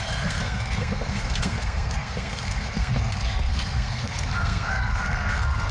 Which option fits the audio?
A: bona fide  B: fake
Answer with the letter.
B